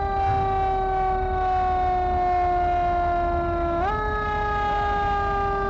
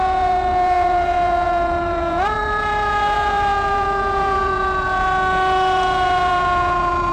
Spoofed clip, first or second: second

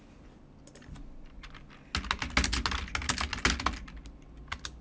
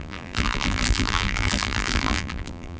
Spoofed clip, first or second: second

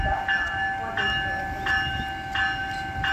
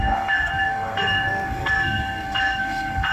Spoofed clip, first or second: second